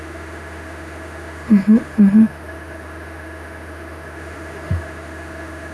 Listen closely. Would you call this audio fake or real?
fake